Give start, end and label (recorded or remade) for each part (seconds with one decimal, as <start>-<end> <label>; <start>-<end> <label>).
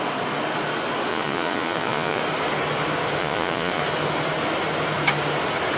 0.0-1.1 recorded; 1.1-2.2 remade; 2.2-3.2 recorded; 3.2-3.8 remade; 3.8-5.8 recorded